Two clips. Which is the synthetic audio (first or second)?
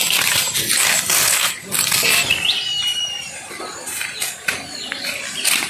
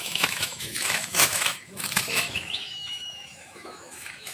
second